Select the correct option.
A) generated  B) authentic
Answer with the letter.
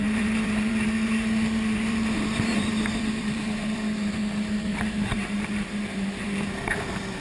A